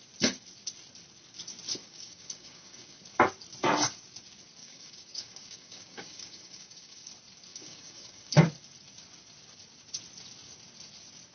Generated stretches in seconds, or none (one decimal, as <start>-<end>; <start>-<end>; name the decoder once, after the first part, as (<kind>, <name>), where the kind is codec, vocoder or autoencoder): 1.8-3.0 (codec, DAC); 4.6-7.1; 7.5-8.3